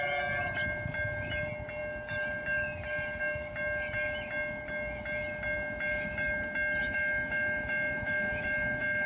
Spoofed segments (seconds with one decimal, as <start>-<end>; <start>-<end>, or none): 6.8-9.1